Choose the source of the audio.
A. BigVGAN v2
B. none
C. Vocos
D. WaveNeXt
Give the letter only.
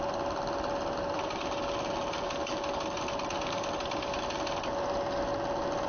B